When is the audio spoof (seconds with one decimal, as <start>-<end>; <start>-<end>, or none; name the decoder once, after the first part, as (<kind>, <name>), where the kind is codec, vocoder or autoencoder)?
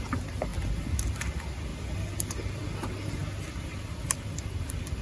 3.2-4.4 (vocoder, BigVGAN v2)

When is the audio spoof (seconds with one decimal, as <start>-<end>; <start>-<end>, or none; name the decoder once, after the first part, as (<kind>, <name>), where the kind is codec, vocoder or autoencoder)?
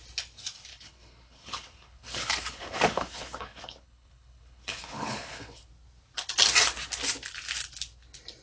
0.7-5.7 (codec, HILCodec)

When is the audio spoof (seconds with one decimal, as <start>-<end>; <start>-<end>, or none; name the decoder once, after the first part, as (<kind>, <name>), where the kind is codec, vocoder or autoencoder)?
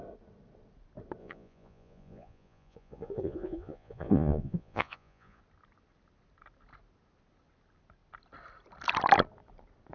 1.2-5.4 (vocoder, Vocos)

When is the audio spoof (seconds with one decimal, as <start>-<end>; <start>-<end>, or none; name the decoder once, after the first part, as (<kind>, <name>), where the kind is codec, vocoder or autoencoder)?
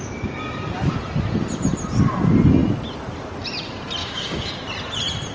4.0-4.5 (codec, DAC)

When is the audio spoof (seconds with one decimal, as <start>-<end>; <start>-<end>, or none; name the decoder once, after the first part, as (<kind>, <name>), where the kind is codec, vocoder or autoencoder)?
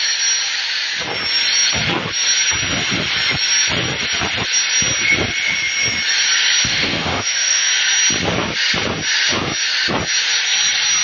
6.6-7.7 (autoencoder, DAC-VAE)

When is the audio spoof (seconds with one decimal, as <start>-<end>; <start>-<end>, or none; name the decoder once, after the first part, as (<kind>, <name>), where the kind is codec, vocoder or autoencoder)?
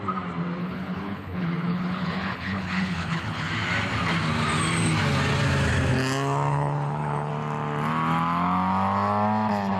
0.6-3.5 (codec, HILCodec); 6.5-7.3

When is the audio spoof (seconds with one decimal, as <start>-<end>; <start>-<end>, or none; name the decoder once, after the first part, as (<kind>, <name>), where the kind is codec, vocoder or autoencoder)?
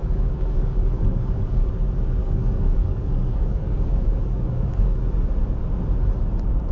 0.0-1.7 (codec, DAC); 2.2-5.0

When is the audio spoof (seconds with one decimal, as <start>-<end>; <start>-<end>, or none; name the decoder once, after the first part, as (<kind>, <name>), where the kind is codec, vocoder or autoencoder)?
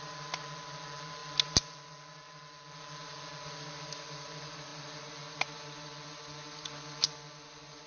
none